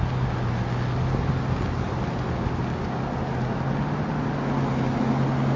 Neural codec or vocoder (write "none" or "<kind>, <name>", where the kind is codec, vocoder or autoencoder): none